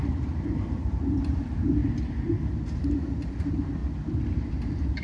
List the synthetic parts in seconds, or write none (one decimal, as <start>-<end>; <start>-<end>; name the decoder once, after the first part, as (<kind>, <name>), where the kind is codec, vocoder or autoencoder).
0.0-1.8 (vocoder, BigVGAN v2); 2.6-3.8; 4.4-5.0